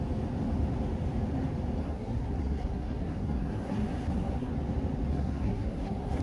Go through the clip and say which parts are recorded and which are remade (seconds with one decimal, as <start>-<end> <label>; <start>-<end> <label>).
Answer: 0.0-1.8 recorded; 1.8-4.5 remade; 4.5-5.1 recorded; 5.1-6.2 remade